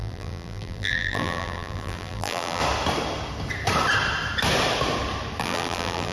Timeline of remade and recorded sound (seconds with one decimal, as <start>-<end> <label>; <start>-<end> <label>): 0.0-2.6 remade; 2.6-5.4 recorded; 5.4-6.1 remade